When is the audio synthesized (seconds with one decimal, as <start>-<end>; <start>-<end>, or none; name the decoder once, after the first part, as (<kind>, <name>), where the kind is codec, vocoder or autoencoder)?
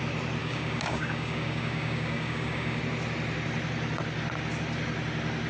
0.4-2.8 (codec, DAC)